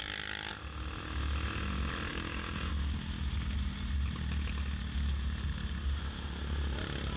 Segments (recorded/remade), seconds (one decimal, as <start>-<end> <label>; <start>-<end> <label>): 0.0-2.1 recorded; 2.1-2.7 remade; 2.7-7.2 recorded